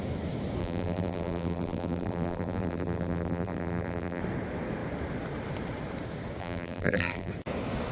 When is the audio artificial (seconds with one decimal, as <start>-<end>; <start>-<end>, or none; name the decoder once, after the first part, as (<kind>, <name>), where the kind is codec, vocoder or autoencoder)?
0.6-4.2 (vocoder, BigVGAN v2); 6.4-7.3